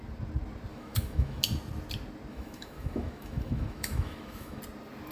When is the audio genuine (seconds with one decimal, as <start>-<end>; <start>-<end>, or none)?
0.0-0.7; 1.4-2.3; 4.6-5.1